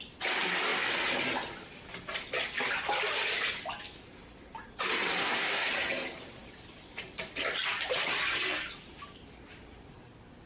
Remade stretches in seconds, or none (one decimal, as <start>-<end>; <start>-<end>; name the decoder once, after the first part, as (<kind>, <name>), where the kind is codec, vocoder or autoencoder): 5.2-5.7 (codec, SNAC)